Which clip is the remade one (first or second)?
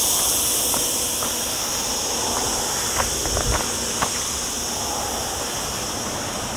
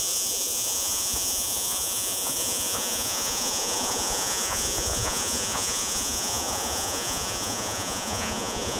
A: second